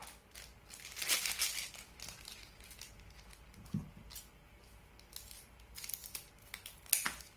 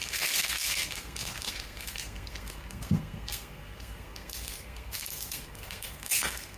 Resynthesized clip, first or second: second